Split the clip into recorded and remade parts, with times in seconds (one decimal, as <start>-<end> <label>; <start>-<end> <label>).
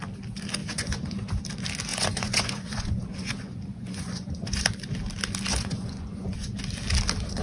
0.0-0.6 recorded; 0.6-1.4 remade; 1.4-1.9 recorded; 1.9-4.6 remade; 4.6-5.5 recorded; 5.5-6.6 remade; 6.6-7.4 recorded